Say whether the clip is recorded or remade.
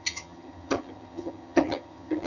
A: remade